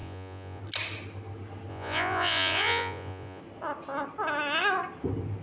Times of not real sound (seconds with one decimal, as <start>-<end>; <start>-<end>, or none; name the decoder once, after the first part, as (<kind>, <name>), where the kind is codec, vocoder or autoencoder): 0.0-0.6 (vocoder, Vocos); 1.7-3.4